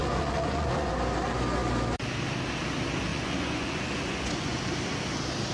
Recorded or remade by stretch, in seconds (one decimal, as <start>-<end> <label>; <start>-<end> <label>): 0.0-0.9 remade; 0.9-3.1 recorded; 3.1-4.6 remade; 4.6-5.5 recorded